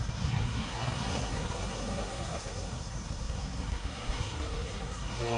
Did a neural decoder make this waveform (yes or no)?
yes